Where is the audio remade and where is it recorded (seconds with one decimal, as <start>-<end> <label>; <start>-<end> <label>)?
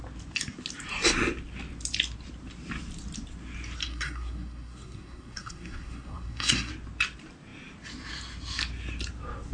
0.0-3.8 recorded; 3.8-6.7 remade; 6.7-9.5 recorded